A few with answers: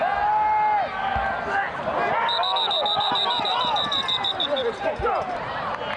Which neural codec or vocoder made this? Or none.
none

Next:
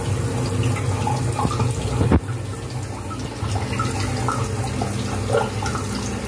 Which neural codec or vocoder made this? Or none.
none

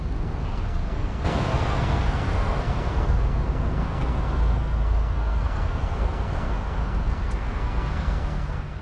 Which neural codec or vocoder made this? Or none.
codec, SNAC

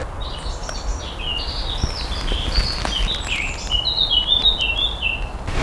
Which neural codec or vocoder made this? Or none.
none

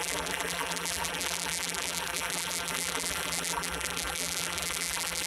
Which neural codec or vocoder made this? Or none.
vocoder, BigVGAN v2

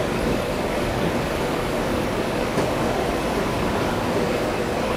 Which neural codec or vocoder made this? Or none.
codec, DAC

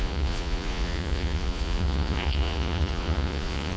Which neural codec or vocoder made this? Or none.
vocoder, Vocos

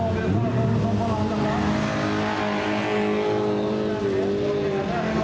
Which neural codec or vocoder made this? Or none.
none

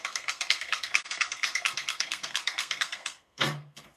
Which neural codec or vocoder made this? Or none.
codec, SNAC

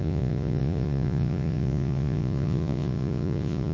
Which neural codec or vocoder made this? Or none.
vocoder, Vocos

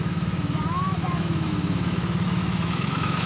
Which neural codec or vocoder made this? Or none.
autoencoder, DAC-VAE